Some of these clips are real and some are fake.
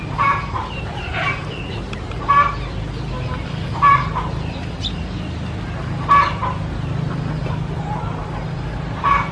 real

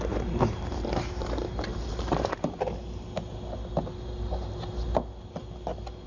real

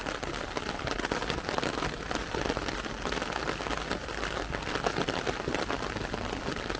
real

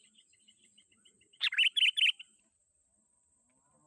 real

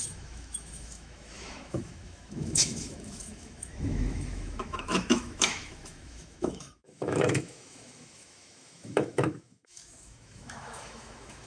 fake